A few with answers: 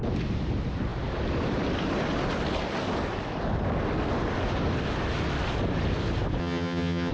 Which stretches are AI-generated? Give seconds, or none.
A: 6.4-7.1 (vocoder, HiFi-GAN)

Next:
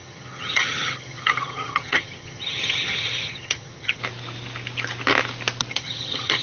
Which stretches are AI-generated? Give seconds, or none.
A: 0.0-4.0 (vocoder, HiFi-GAN); 5.7-6.4

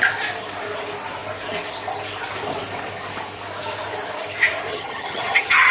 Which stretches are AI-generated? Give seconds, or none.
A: 4.7-5.7 (vocoder, HiFi-GAN)

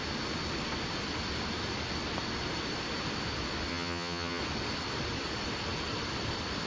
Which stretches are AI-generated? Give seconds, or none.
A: 3.7-4.4 (vocoder, HiFi-GAN)

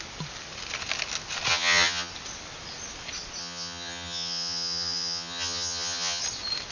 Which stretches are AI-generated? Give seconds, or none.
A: 1.5-2.1 (vocoder, HiFi-GAN); 3.4-6.2

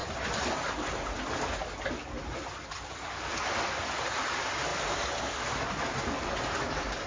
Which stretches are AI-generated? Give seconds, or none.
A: none